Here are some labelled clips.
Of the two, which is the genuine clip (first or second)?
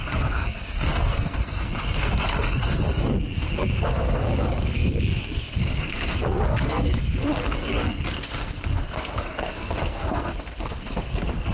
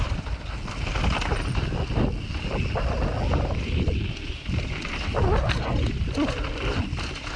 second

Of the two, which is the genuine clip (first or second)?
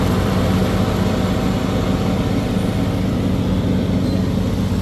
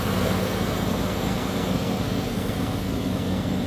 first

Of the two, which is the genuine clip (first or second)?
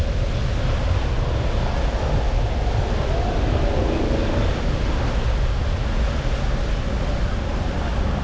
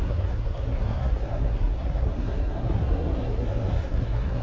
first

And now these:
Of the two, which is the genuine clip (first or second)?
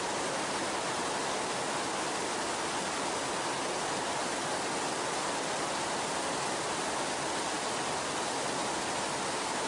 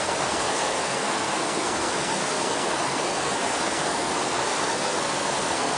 first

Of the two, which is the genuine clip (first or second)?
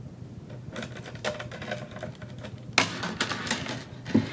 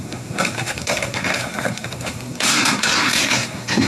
first